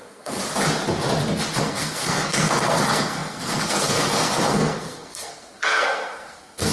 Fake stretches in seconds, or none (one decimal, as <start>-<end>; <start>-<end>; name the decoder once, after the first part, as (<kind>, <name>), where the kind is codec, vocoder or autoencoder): 0.0-0.4 (codec, SNAC); 1.6-6.7